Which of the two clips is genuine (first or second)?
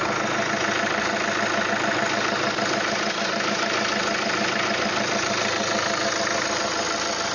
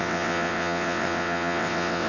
first